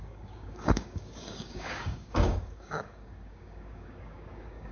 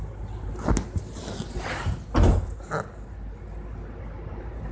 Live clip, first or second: second